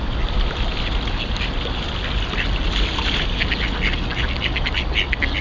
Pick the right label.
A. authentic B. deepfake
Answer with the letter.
A